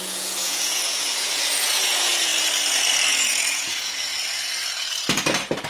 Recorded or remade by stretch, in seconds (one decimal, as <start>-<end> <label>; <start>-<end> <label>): 0.0-2.3 remade; 2.3-3.1 recorded; 3.1-4.1 remade; 4.1-5.7 recorded